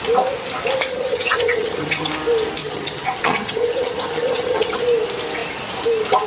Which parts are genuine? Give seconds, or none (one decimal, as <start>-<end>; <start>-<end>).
0.0-0.9; 2.1-2.6; 4.8-6.3